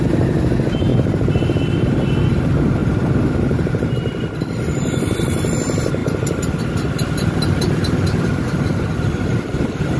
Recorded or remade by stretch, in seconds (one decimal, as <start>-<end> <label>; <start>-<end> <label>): 0.0-0.9 recorded; 0.9-1.6 remade; 1.6-2.8 recorded; 2.8-3.9 remade; 3.9-10.0 recorded